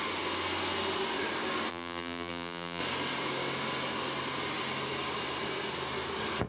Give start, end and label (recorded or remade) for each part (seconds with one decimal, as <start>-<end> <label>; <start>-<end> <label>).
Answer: 0.0-1.7 recorded; 1.7-2.8 remade; 2.8-6.5 recorded